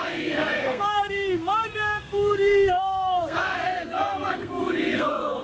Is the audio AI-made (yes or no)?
yes